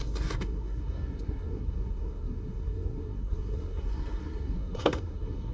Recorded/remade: remade